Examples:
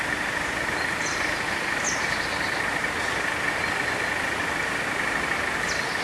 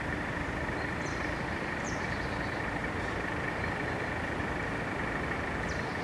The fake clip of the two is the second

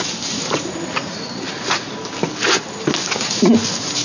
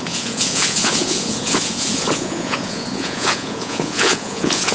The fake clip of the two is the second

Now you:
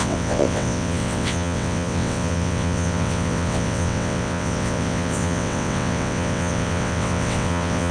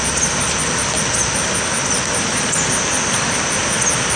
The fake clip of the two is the first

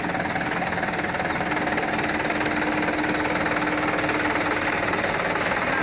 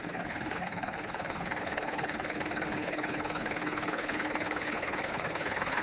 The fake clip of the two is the second